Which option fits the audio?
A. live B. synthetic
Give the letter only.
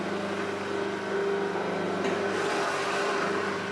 A